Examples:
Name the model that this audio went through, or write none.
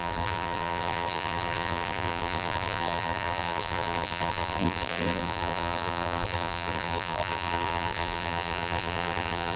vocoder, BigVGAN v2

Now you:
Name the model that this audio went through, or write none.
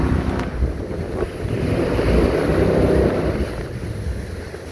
none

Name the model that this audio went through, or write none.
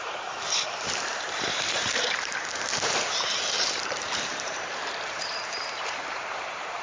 vocoder, BigVGAN v2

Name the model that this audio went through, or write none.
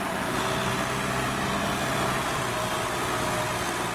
none